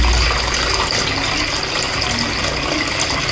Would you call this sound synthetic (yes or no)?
no